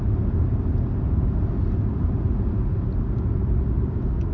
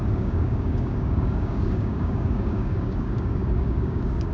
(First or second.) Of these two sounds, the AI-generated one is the second